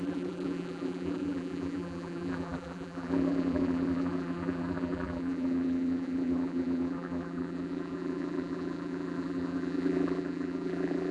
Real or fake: fake